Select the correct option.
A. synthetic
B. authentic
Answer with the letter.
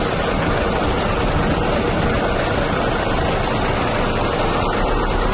B